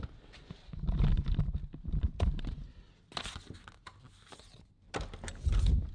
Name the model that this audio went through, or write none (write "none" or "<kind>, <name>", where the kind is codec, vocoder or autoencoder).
none